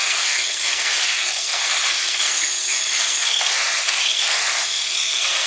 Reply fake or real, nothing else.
fake